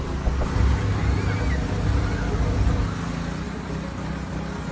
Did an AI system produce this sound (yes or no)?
no